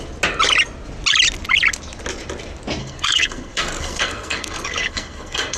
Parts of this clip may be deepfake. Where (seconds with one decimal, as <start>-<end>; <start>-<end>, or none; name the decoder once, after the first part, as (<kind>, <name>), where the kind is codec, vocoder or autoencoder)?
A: 2.8-5.6 (codec, SNAC)

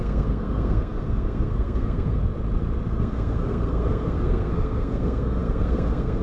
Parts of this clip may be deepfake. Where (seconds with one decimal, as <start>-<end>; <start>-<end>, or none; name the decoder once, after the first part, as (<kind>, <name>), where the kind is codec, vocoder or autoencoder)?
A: 0.0-2.2 (codec, SNAC); 3.0-6.2

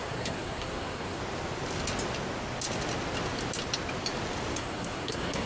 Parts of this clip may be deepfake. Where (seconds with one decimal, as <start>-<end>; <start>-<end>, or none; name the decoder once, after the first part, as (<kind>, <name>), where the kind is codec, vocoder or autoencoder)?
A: 0.0-1.2 (codec, SNAC); 4.5-5.5

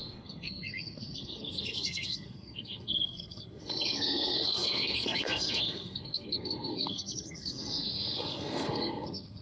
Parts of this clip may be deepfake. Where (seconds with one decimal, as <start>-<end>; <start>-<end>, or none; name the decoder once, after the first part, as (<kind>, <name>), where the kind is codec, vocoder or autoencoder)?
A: 0.0-9.4 (codec, SNAC)

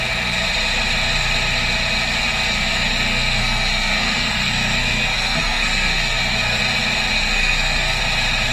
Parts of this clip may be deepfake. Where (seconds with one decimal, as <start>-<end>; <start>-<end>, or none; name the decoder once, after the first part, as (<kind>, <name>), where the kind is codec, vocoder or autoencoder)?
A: 2.5-6.6 (codec, SNAC); 7.1-8.0

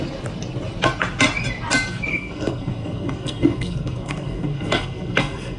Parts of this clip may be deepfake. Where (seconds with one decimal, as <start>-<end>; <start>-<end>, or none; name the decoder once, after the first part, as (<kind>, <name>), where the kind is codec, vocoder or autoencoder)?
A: 2.1-5.6 (codec, SNAC)